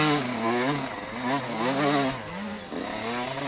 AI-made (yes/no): no